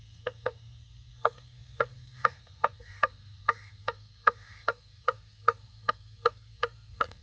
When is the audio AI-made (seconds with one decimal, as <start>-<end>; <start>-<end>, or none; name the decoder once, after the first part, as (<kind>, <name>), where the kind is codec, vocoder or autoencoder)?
0.0-7.2 (codec, SNAC)